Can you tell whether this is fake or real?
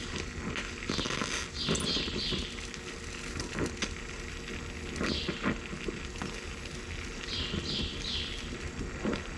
real